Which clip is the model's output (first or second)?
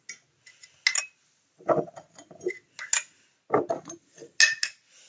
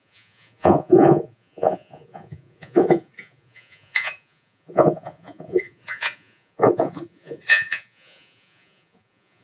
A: second